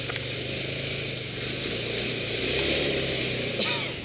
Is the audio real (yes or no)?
yes